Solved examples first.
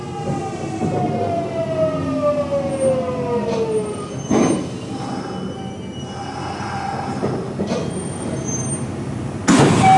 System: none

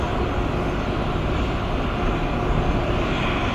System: none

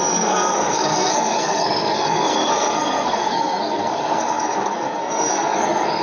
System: codec, SNAC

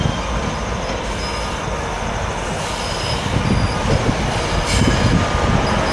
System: none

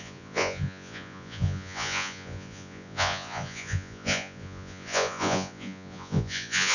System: vocoder, Vocos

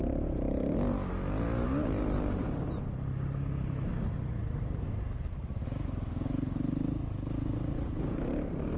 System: none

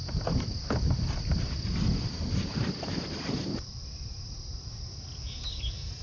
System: none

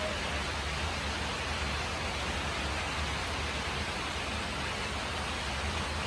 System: none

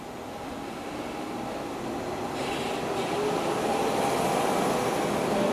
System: none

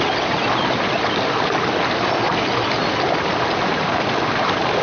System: none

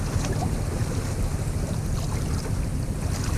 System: none